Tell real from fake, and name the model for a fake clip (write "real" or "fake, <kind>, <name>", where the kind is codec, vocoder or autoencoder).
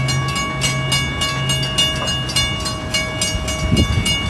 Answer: real